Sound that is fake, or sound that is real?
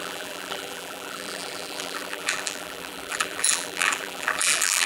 fake